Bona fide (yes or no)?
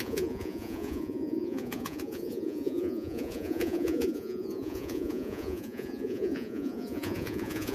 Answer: no